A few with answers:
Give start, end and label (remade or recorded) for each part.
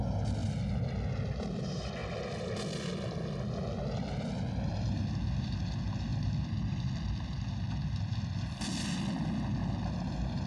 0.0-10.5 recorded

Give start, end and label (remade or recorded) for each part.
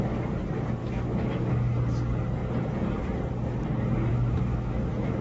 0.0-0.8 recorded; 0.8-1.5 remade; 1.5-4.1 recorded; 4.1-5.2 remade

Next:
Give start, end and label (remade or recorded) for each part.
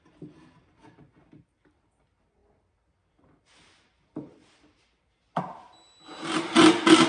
0.0-7.1 recorded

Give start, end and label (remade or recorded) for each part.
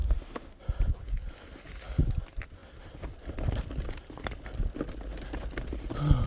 0.0-0.6 remade; 0.6-6.3 recorded